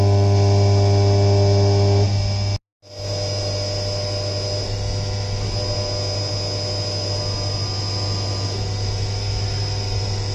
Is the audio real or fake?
real